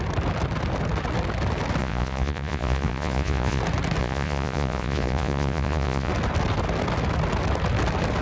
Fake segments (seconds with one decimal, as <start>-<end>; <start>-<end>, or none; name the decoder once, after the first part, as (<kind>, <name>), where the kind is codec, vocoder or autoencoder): 1.8-3.6 (vocoder, Vocos); 4.0-6.1